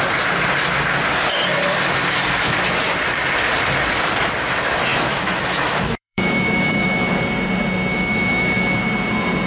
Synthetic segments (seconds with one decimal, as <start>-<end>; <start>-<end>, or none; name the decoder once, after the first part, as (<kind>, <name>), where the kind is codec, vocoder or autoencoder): 4.9-7.1 (autoencoder, DAC-VAE); 7.9-8.8